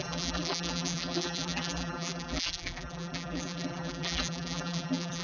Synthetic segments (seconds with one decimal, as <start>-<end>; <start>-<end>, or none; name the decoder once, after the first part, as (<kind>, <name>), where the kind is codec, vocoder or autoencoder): 0.0-5.2 (vocoder, BigVGAN v2)